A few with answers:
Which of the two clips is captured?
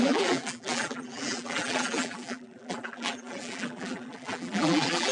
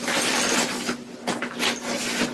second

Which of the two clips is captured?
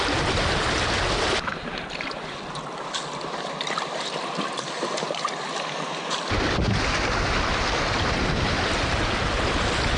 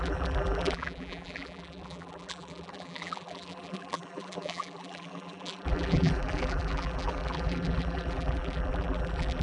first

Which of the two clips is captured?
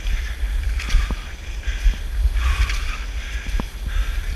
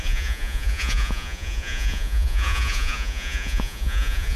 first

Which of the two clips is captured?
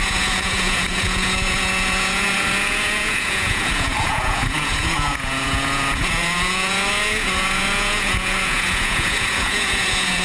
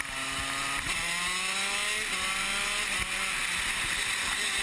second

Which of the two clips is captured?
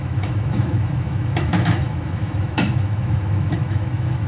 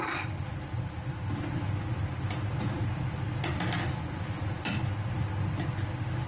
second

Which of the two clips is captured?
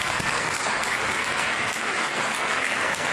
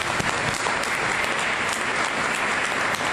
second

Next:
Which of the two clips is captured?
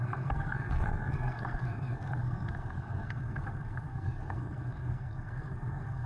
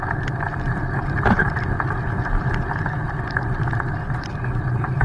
second